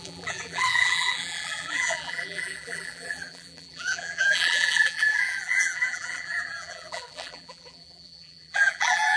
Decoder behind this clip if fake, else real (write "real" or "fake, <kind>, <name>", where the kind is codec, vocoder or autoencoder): fake, vocoder, BigVGAN v2